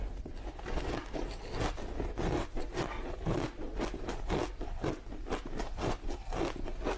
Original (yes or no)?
yes